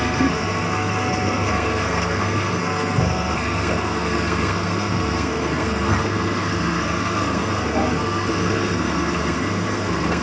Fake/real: fake